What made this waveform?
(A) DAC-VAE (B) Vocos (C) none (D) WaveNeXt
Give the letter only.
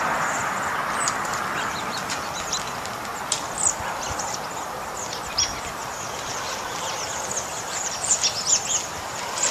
C